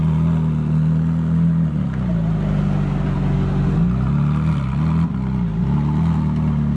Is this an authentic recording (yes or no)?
yes